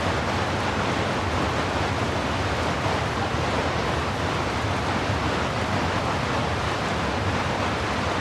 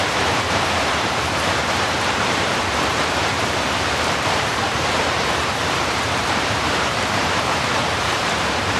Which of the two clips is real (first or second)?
first